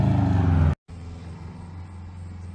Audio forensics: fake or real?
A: real